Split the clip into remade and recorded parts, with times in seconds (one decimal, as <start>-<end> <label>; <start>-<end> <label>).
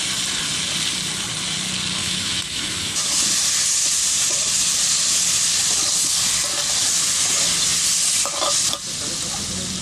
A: 0.0-2.0 recorded; 2.0-3.0 remade; 3.0-9.8 recorded